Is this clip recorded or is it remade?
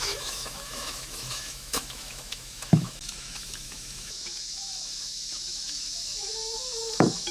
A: remade